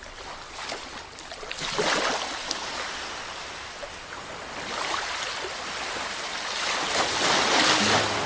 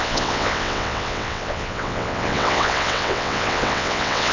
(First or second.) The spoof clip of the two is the second